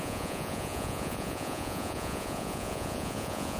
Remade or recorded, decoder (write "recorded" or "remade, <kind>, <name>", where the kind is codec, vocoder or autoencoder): remade, vocoder, Vocos